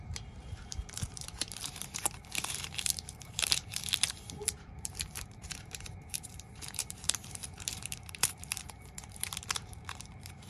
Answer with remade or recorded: remade